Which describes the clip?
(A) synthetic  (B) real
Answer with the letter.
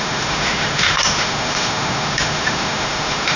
A